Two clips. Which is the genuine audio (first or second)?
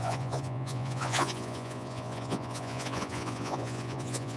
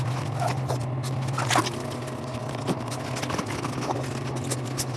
second